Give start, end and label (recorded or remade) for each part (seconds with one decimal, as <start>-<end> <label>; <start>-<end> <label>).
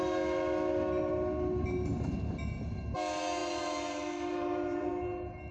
0.0-3.4 recorded; 3.4-4.9 remade; 4.9-5.5 recorded